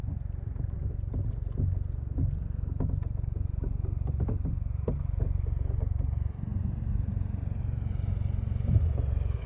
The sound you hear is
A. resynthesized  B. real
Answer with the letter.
B